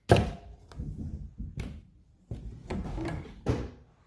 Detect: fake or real real